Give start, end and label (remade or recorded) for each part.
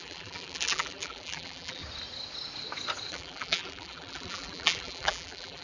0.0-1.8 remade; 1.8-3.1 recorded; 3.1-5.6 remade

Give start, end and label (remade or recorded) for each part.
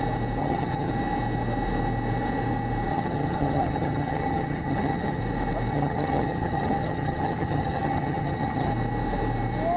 0.0-0.4 recorded; 0.4-0.9 remade; 0.9-2.9 recorded; 2.9-5.2 remade; 5.2-5.7 recorded; 5.7-8.7 remade; 8.7-9.8 recorded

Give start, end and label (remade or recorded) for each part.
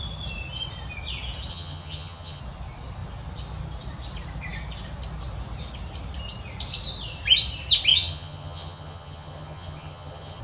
0.0-1.5 recorded; 1.5-2.4 remade; 2.4-7.9 recorded; 7.9-10.4 remade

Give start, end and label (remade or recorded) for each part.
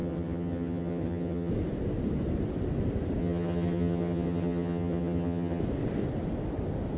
0.0-1.5 remade; 1.5-3.2 recorded; 3.2-5.6 remade; 5.6-7.0 recorded